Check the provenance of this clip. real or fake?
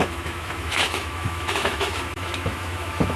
fake